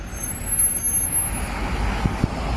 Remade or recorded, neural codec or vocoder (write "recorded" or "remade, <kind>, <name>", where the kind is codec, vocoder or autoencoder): recorded